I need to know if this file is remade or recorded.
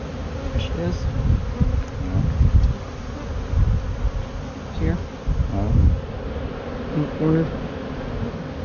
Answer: recorded